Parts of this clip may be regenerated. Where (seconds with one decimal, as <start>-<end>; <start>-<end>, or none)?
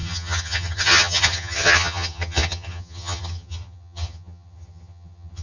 0.0-5.4